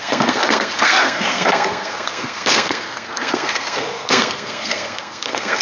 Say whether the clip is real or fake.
fake